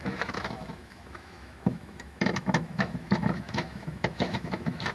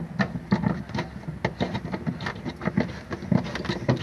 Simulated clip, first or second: first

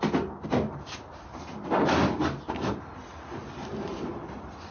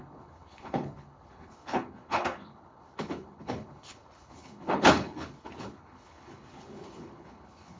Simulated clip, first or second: second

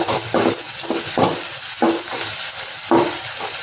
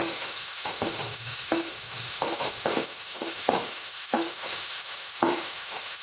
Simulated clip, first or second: second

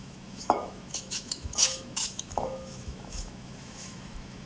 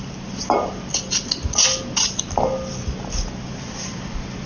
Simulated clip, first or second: first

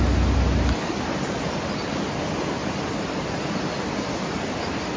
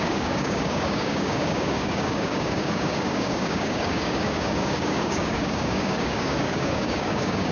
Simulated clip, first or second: second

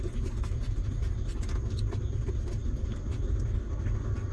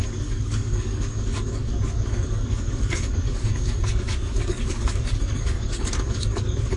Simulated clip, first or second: second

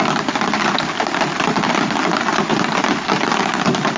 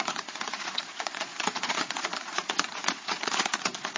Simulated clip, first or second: second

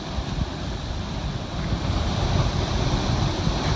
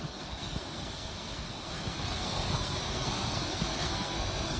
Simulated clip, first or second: second